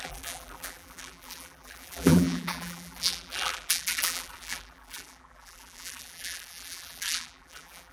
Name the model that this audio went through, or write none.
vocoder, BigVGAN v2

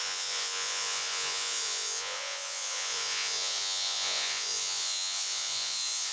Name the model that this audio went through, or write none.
vocoder, Vocos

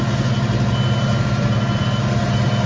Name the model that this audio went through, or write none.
none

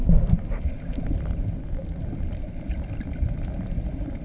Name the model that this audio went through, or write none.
none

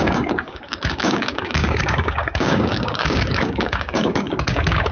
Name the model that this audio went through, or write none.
codec, DAC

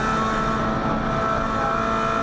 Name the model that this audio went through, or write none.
none